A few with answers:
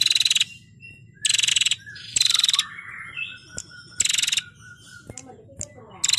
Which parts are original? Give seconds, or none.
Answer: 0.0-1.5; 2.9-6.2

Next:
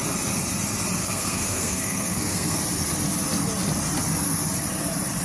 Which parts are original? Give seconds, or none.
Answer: 0.0-1.0; 2.6-5.2

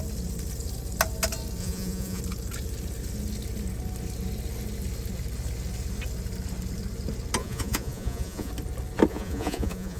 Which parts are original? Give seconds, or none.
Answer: 0.0-1.6; 2.2-7.4; 8.5-9.1

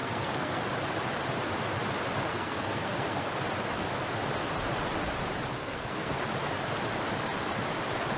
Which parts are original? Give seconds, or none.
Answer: 0.6-2.3; 3.3-5.6; 6.2-8.2

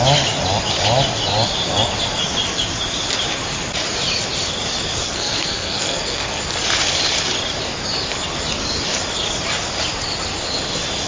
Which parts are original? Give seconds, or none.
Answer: 0.0-5.0; 6.4-11.1

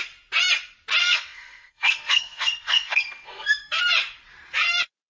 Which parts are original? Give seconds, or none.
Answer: 0.0-1.0; 3.8-5.1